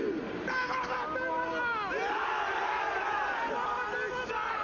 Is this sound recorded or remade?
recorded